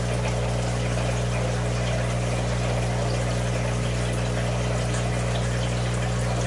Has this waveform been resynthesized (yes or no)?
no